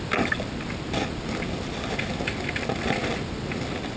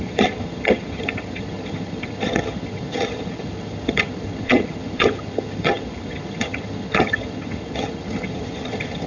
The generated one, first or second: second